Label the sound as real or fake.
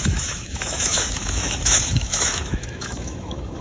fake